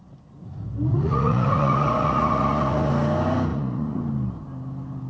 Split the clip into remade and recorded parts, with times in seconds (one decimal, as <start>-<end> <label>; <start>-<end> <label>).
0.0-0.9 recorded; 0.9-2.9 remade; 2.9-3.5 recorded; 3.5-4.0 remade; 4.0-5.1 recorded